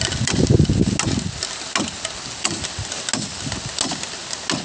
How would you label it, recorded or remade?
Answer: recorded